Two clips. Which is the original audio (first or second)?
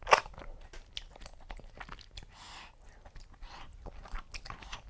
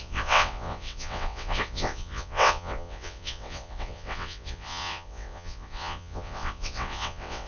first